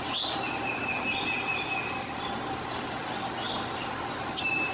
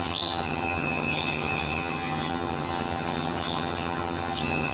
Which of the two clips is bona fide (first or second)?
first